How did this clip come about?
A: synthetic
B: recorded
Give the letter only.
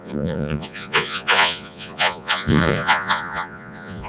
A